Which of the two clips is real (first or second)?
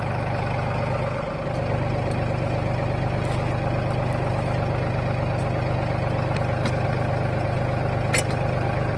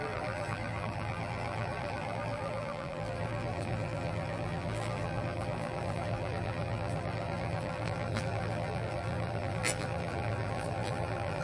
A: first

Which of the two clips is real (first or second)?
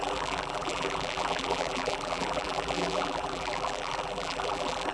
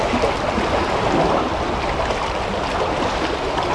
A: second